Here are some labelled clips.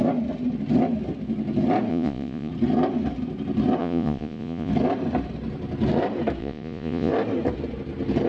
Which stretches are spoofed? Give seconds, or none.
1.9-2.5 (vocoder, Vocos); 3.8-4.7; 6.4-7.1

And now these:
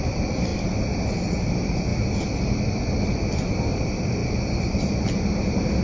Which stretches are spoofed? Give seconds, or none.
0.5-1.2 (vocoder, BigVGAN v2)

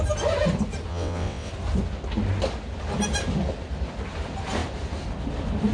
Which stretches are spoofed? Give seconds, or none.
0.9-1.5 (vocoder, WaveNeXt)

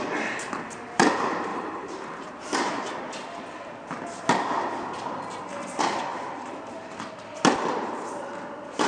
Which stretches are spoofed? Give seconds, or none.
1.5-3.1 (vocoder, BigVGAN v2); 6.1-6.9